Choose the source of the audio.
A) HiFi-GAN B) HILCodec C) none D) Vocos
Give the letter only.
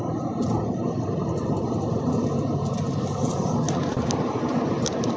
C